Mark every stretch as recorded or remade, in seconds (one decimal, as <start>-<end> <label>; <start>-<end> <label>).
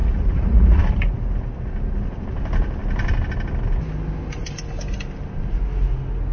0.0-0.8 remade; 0.8-6.3 recorded